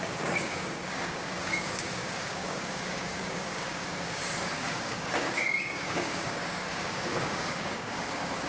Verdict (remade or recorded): remade